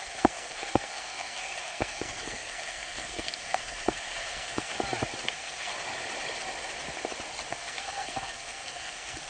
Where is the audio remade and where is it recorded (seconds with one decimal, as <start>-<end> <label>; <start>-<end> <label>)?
0.0-4.7 remade; 4.7-5.3 recorded; 5.3-5.7 remade; 5.7-7.5 recorded; 7.5-9.3 remade